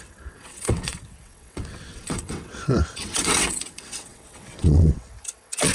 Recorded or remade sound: remade